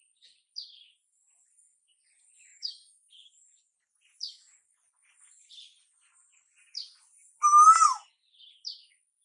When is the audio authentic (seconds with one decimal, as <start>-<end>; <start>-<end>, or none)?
0.0-2.5; 3.1-9.2